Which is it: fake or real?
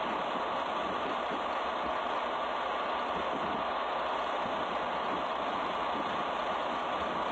real